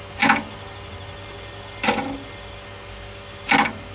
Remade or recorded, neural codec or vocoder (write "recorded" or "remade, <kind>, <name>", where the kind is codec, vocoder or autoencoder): recorded